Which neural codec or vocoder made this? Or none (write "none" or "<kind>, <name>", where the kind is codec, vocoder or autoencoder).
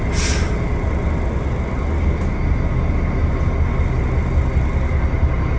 none